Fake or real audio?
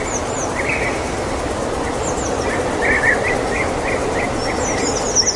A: real